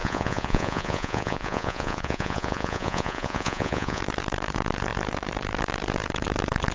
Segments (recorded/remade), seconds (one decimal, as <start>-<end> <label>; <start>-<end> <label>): 0.0-4.0 remade; 4.0-6.7 recorded